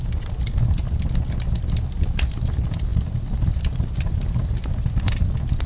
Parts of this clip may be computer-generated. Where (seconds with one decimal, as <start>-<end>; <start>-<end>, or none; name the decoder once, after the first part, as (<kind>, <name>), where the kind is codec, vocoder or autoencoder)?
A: none